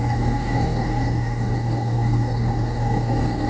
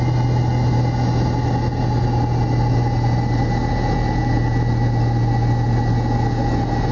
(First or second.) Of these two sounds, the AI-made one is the first